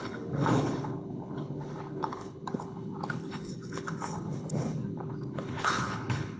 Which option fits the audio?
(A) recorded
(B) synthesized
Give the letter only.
B